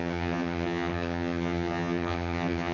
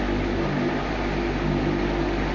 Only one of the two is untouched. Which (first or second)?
second